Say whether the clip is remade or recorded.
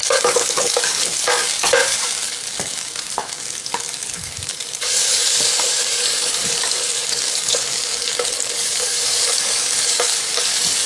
remade